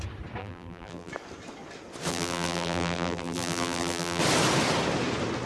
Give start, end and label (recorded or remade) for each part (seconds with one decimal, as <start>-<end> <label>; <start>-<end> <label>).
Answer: 0.0-0.4 recorded; 0.4-1.1 remade; 1.1-2.1 recorded; 2.1-4.2 remade; 4.2-5.5 recorded

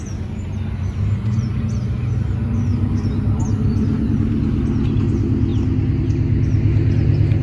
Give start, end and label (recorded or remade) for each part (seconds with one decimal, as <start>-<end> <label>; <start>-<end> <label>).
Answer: 0.0-7.4 recorded

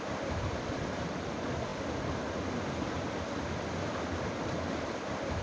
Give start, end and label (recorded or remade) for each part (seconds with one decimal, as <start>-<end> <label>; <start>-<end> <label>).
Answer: 0.0-5.4 recorded

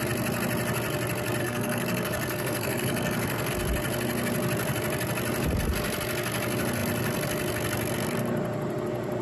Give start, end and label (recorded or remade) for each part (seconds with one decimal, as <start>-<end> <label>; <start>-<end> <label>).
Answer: 0.0-1.4 recorded; 1.4-3.5 remade; 3.5-9.2 recorded

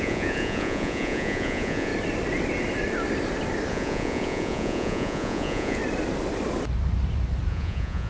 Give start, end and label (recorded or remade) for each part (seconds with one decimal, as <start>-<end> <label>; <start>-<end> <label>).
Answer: 0.0-1.9 remade; 1.9-3.7 recorded; 3.7-5.8 remade; 5.8-7.5 recorded; 7.5-8.1 remade

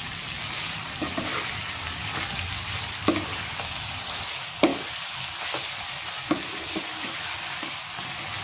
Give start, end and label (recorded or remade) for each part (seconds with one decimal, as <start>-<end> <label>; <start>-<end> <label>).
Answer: 0.0-8.4 recorded

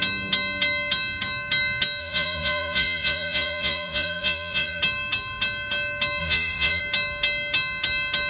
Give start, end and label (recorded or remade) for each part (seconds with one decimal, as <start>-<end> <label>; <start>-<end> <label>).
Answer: 0.0-2.0 recorded; 2.0-4.8 remade; 4.8-6.2 recorded; 6.2-6.8 remade; 6.8-8.3 recorded

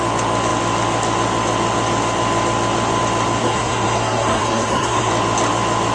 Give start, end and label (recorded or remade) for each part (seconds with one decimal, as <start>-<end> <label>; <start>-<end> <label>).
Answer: 0.0-3.4 recorded; 3.4-5.1 remade; 5.1-5.9 recorded